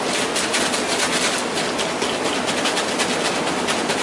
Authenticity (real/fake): real